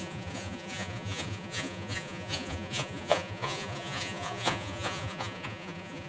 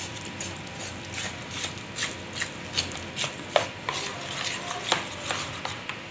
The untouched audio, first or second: second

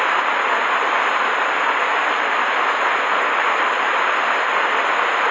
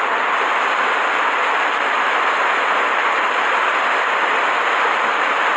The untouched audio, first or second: first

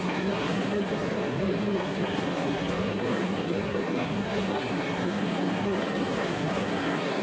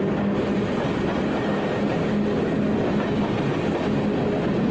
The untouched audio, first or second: second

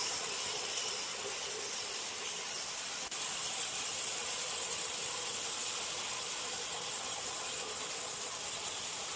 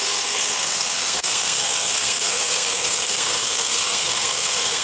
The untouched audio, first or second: first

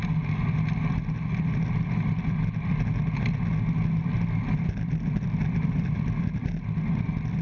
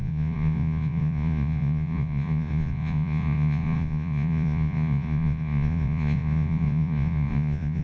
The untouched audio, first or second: first